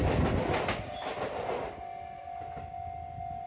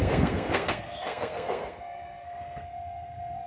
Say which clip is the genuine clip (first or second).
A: first